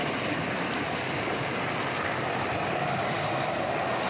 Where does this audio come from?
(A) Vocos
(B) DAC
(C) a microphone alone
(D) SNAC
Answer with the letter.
C